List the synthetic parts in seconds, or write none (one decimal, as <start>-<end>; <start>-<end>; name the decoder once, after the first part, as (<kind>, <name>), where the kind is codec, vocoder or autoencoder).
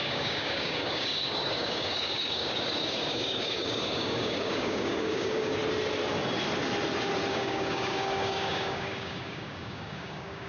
0.0-5.6 (codec, DAC); 7.3-10.5